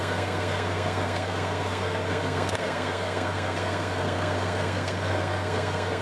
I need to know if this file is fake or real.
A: fake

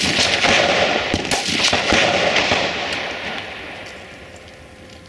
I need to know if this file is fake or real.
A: real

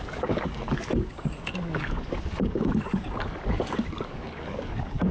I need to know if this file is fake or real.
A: fake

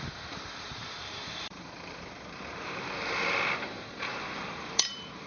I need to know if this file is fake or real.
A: fake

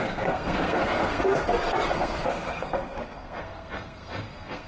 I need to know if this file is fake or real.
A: fake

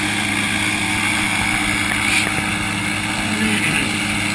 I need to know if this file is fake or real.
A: real